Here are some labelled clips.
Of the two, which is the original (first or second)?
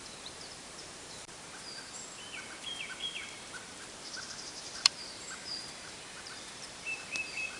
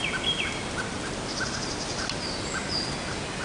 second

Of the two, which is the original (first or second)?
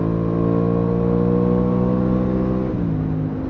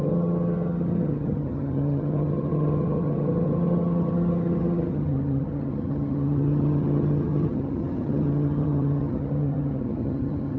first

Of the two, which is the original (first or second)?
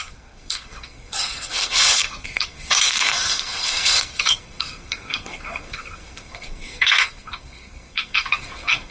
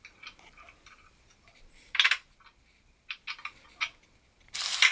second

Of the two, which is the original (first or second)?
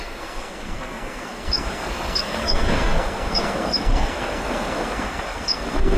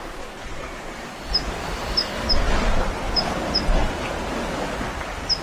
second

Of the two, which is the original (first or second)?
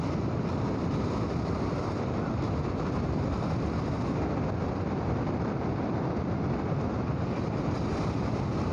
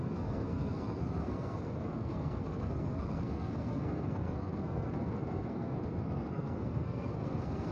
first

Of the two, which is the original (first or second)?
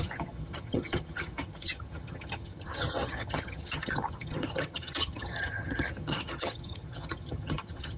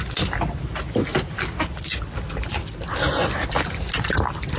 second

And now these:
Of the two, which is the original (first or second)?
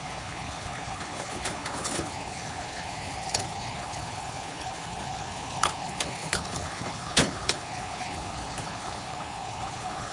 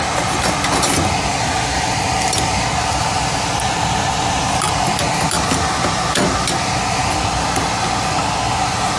second